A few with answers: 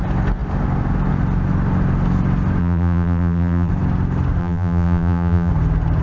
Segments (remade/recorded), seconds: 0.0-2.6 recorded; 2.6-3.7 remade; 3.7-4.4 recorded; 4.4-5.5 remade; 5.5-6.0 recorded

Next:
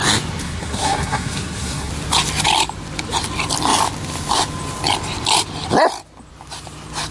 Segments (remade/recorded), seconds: 0.0-0.4 recorded; 0.4-1.9 remade; 1.9-7.1 recorded